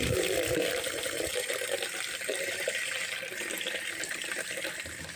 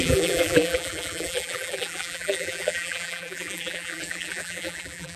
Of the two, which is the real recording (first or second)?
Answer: first